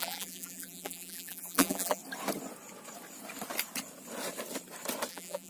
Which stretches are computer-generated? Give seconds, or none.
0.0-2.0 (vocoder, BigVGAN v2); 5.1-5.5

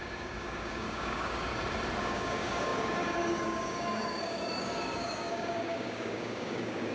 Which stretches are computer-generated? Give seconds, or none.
0.0-1.5 (codec, DAC); 2.0-6.9

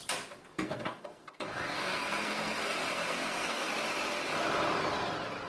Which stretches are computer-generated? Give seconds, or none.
0.4-3.7 (codec, SNAC)

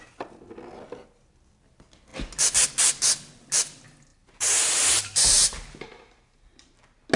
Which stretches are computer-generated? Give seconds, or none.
4.1-6.7 (vocoder, BigVGAN v2)

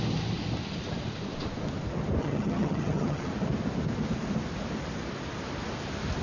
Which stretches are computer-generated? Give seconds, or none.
2.2-3.3 (vocoder, HiFi-GAN)